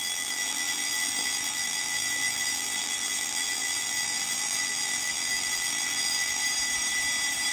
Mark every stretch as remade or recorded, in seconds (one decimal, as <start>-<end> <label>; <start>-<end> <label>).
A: 0.0-6.4 remade; 6.4-7.5 recorded